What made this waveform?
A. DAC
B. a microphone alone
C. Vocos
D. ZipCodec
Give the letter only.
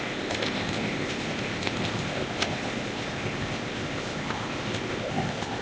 D